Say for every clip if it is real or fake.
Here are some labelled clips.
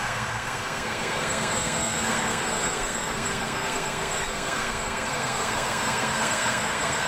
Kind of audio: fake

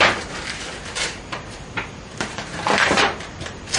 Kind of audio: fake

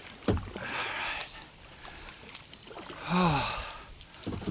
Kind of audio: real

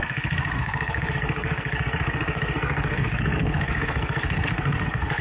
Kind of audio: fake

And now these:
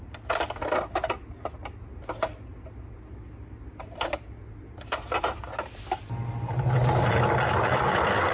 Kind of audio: real